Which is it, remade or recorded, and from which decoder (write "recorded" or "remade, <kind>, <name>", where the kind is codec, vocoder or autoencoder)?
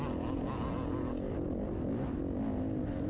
recorded